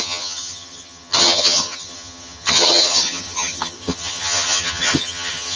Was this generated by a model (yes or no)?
yes